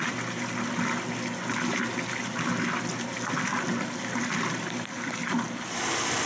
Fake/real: real